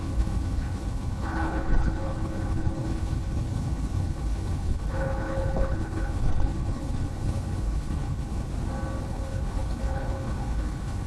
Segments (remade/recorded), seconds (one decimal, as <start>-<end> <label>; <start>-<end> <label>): 0.0-8.5 remade; 8.5-9.0 recorded; 9.0-11.1 remade